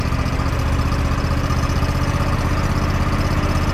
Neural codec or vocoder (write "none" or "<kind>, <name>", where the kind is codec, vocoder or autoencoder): none